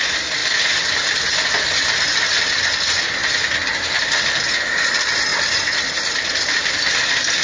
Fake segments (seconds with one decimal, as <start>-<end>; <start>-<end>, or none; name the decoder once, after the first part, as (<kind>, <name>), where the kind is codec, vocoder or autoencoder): 5.3-6.0 (vocoder, BigVGAN v2)